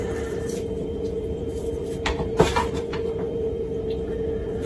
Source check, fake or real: fake